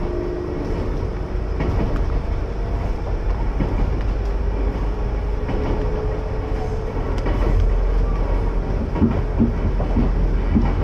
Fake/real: real